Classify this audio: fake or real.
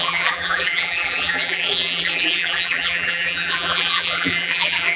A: fake